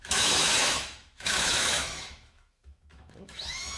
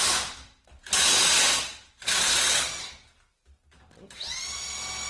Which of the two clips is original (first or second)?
second